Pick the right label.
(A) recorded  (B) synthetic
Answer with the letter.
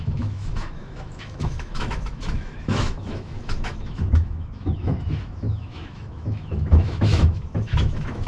B